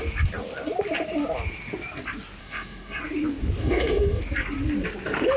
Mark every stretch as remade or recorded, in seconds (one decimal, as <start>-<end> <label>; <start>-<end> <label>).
0.0-2.4 recorded; 2.4-3.0 remade; 3.0-3.6 recorded; 3.6-4.2 remade; 4.2-5.4 recorded